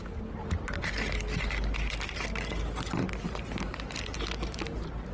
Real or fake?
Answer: real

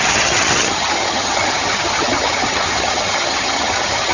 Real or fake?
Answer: fake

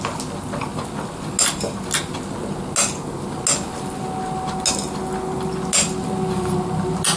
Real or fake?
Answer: real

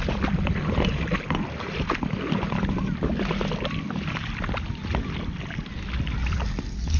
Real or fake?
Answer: real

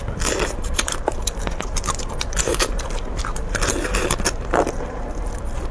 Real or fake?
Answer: real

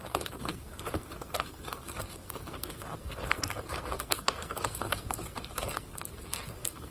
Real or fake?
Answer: fake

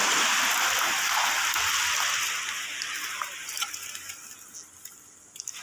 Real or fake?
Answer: real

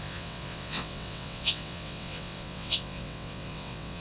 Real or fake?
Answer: fake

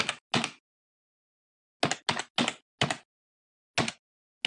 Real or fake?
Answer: real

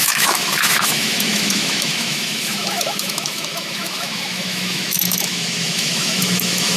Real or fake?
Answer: fake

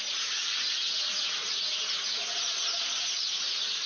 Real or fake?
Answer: fake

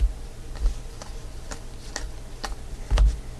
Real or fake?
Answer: real